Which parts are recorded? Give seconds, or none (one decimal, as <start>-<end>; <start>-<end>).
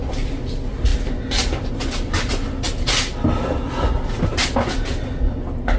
0.0-5.8